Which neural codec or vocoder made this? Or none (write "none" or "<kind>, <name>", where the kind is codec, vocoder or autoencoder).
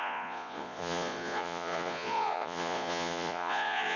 vocoder, Vocos